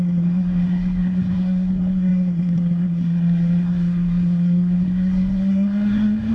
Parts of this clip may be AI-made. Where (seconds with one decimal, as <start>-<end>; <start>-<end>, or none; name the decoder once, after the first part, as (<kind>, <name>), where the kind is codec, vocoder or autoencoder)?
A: 0.0-6.3 (codec, SNAC)